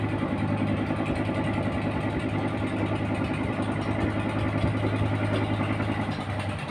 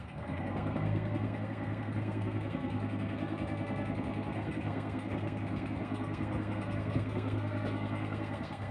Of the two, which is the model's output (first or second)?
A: second